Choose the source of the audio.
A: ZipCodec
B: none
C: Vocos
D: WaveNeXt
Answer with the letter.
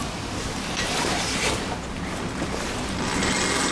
B